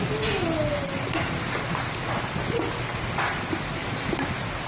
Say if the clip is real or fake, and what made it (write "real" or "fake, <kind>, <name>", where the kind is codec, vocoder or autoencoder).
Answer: real